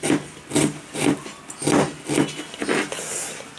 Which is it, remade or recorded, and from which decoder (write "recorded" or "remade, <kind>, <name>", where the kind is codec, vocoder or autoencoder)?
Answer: recorded